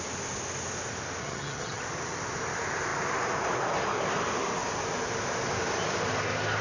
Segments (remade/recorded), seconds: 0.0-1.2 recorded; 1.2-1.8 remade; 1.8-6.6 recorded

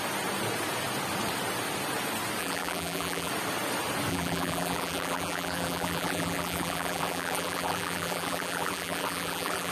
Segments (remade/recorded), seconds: 0.0-2.4 recorded; 2.4-3.3 remade; 3.3-4.1 recorded; 4.1-9.7 remade